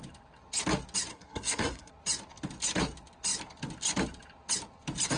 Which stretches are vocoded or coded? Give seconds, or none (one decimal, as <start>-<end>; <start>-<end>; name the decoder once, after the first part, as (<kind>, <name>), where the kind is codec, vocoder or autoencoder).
1.1-1.9 (codec, SNAC)